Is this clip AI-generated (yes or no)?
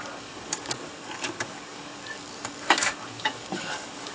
yes